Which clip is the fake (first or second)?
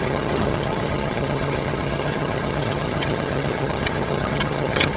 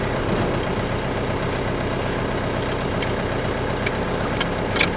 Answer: first